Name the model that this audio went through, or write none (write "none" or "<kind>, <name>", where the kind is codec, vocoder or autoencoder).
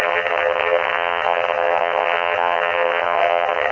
vocoder, HiFi-GAN